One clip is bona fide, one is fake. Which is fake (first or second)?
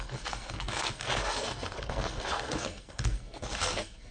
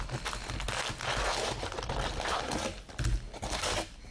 first